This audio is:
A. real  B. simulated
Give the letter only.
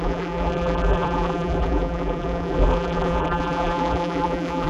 B